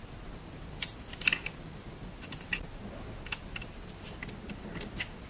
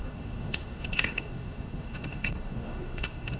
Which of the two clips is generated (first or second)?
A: second